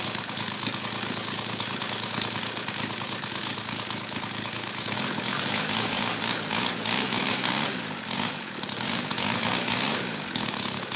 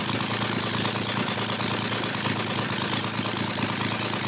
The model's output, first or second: first